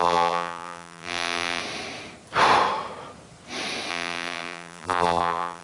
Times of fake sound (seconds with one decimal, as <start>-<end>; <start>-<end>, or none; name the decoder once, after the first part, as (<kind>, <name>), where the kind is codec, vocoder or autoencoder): 0.0-1.6 (vocoder, BigVGAN v2); 3.9-5.6